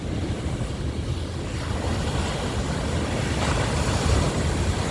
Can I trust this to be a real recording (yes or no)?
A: yes